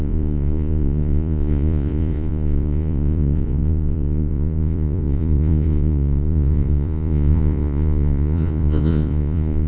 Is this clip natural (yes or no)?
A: no